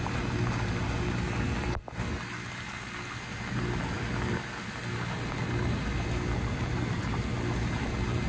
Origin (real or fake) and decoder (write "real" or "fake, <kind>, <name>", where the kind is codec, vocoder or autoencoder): real